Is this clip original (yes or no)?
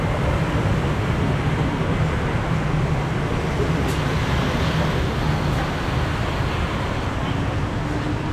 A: yes